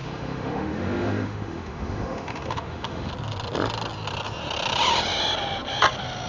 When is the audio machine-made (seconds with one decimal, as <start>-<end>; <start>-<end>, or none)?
0.0-3.1